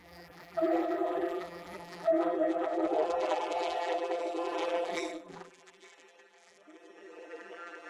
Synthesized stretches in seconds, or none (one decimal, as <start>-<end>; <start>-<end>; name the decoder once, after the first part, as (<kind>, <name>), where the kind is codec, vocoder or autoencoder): 0.0-7.9 (vocoder, BigVGAN v2)